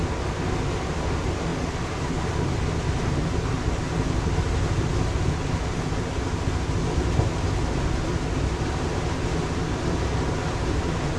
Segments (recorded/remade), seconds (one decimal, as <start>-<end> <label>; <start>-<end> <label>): 0.0-11.2 recorded

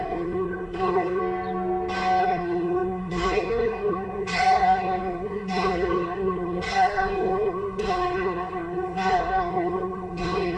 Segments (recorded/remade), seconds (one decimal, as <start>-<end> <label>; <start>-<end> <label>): 0.0-1.2 remade; 1.2-2.2 recorded; 2.2-10.6 remade

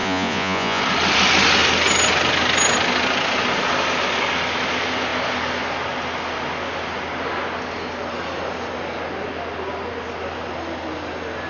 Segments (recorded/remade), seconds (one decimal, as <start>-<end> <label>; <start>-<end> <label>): 0.0-0.8 remade; 0.8-11.5 recorded